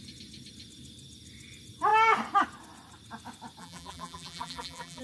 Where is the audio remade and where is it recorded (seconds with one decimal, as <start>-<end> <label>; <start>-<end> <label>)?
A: 0.0-3.6 recorded; 3.6-5.0 remade

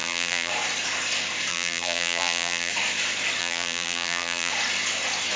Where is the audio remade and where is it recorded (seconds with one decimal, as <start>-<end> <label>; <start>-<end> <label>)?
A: 0.0-0.5 remade; 0.5-1.5 recorded; 1.5-2.7 remade; 2.7-3.4 recorded; 3.4-4.5 remade; 4.5-5.4 recorded

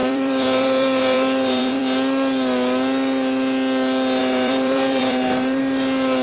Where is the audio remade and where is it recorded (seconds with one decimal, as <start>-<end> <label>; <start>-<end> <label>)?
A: 0.0-1.8 remade; 1.8-4.2 recorded; 4.2-5.6 remade; 5.6-6.2 recorded